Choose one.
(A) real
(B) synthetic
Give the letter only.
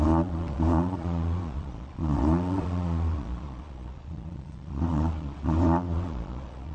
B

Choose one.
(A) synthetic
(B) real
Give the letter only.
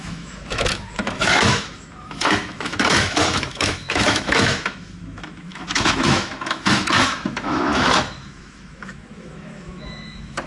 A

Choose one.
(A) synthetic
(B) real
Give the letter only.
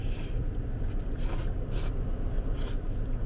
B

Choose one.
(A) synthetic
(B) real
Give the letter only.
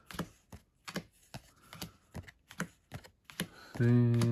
B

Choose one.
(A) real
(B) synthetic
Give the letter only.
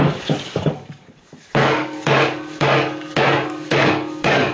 B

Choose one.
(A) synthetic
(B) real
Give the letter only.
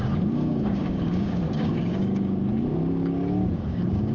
A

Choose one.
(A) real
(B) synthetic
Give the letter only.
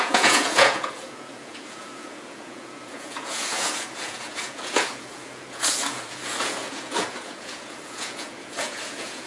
B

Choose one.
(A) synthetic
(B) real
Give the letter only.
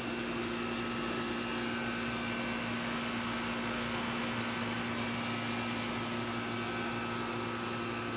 B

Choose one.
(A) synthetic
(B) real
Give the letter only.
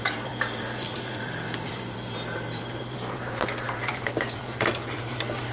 A